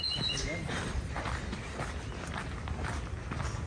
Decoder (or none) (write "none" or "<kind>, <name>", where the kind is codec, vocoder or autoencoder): none